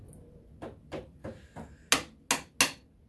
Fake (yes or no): no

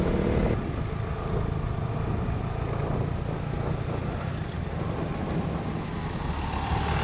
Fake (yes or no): no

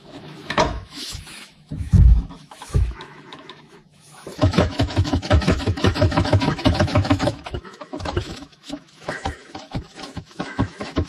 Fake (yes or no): yes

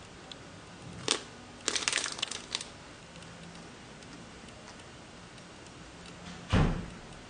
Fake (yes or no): no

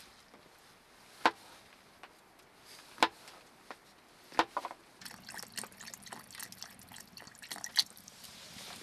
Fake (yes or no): no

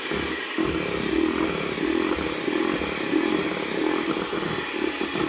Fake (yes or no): no